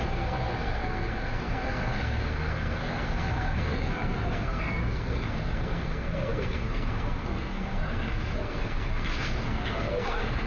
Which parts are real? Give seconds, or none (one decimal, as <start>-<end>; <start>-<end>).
none